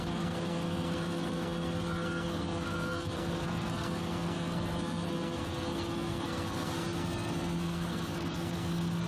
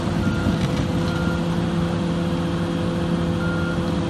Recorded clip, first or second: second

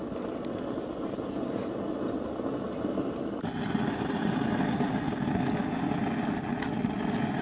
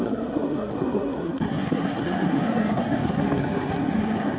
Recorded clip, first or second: first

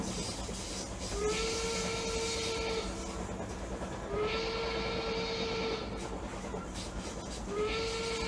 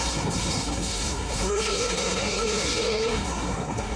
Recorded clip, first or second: first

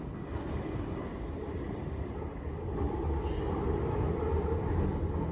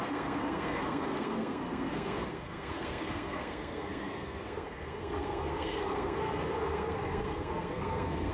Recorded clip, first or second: first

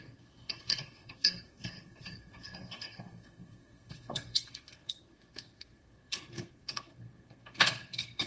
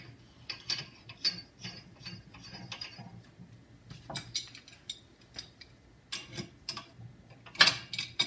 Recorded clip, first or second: second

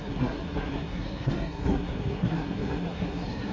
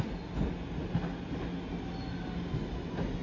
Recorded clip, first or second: second